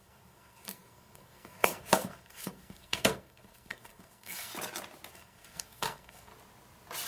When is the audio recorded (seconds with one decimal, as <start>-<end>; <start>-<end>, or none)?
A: 4.5-5.1; 6.3-7.1